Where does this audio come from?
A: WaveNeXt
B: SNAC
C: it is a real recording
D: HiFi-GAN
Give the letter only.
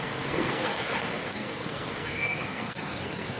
B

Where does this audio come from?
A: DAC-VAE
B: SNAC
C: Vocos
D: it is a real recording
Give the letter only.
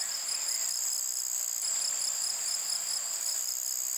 D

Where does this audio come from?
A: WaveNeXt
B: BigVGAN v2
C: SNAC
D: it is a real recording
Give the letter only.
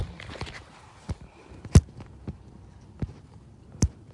B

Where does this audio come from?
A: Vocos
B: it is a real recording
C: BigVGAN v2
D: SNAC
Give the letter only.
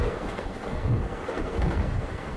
D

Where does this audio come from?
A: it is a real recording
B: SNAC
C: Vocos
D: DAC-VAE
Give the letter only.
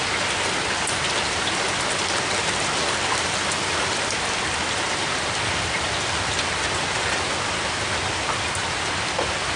A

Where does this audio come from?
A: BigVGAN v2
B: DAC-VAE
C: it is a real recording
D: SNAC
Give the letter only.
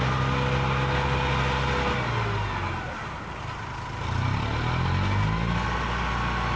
C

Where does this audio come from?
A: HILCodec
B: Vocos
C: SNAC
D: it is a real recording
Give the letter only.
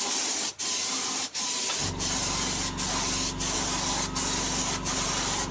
D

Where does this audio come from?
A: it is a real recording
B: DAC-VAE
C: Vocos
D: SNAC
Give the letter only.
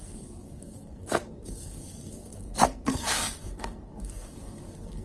D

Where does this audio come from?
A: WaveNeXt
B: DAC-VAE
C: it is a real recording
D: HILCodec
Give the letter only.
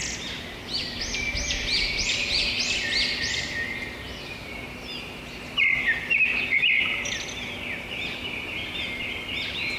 C